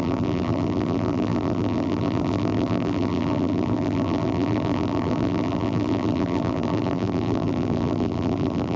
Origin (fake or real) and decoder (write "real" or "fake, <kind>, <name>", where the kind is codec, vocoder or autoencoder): fake, vocoder, BigVGAN v2